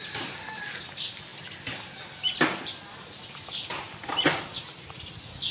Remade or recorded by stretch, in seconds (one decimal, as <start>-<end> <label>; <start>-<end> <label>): 0.0-5.5 recorded